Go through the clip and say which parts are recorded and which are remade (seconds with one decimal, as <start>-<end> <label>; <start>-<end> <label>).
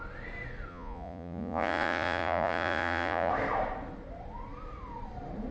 0.0-0.7 recorded; 0.7-3.3 remade; 3.3-5.5 recorded